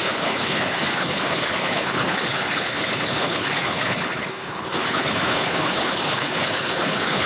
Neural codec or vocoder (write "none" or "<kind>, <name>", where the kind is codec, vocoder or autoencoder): codec, HILCodec